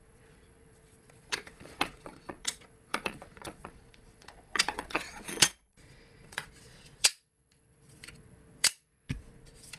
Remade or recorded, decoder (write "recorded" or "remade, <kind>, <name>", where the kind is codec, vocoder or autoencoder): remade, vocoder, Vocos